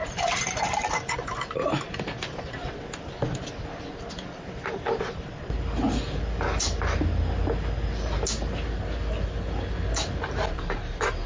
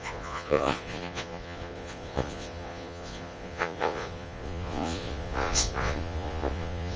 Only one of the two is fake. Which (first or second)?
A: second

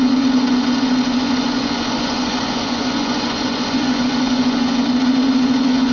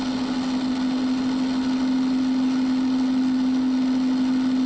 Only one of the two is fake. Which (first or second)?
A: first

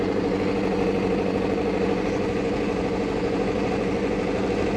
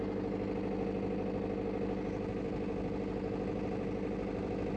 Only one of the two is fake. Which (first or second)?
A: first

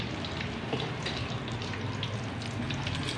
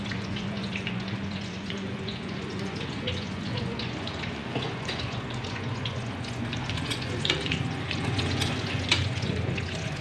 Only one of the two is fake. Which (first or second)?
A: second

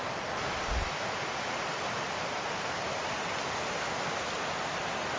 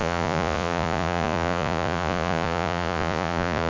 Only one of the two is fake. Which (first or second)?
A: second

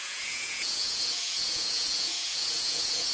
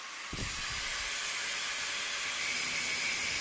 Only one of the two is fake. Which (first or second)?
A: first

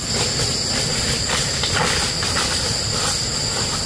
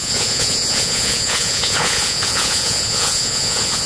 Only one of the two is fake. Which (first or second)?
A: second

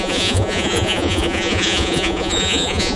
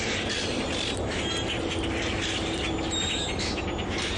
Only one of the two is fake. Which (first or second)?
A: first